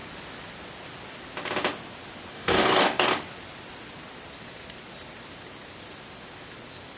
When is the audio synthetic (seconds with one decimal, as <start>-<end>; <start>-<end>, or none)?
2.3-3.1